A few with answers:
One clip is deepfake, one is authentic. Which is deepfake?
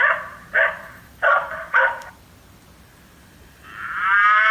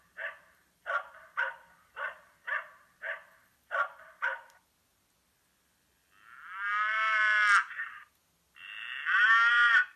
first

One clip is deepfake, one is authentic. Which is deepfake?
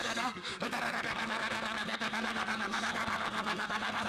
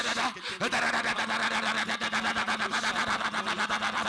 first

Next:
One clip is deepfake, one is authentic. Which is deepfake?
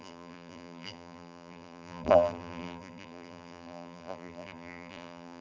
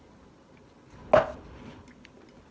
first